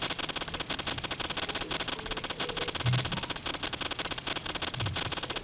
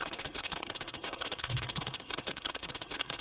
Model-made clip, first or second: second